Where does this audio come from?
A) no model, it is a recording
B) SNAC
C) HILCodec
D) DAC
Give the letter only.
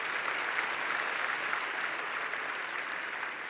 A